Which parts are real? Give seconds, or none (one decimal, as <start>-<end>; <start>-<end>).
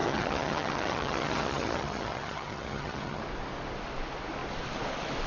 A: 3.2-5.3